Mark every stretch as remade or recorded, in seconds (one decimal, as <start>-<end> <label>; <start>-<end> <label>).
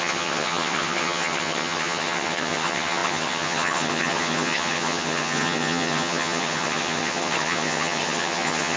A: 0.0-8.8 remade